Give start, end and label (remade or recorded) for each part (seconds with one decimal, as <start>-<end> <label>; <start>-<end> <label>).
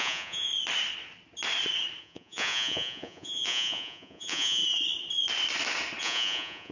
0.0-0.5 remade; 0.5-2.0 recorded; 2.0-4.6 remade; 4.6-6.0 recorded; 6.0-6.7 remade